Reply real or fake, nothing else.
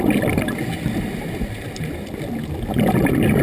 real